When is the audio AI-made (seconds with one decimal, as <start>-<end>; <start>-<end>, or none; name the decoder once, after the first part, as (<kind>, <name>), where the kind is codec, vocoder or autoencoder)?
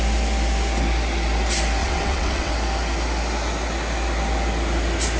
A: 1.8-2.5 (vocoder, WaveNeXt)